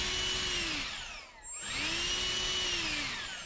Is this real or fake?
real